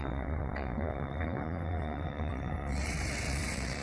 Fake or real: fake